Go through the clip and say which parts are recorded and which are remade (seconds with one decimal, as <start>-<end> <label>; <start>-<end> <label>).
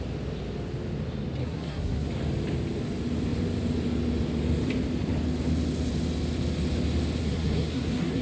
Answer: 0.0-1.4 recorded; 1.4-2.1 remade; 2.1-7.2 recorded; 7.2-8.2 remade